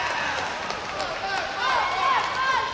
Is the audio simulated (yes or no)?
no